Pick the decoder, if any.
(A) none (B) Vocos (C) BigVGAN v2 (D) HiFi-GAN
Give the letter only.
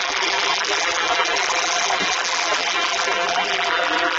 C